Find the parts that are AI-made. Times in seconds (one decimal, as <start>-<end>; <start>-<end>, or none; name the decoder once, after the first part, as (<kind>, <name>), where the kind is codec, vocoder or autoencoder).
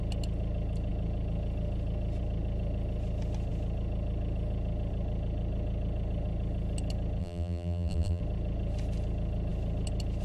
7.2-8.2 (vocoder, BigVGAN v2)